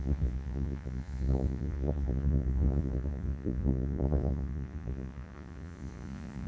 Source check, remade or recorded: remade